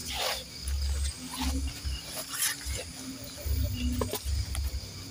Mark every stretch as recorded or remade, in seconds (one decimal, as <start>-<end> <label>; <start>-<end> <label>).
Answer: 0.0-5.1 recorded